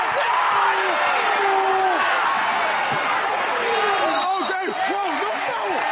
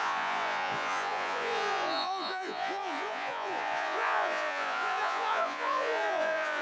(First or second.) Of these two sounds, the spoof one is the second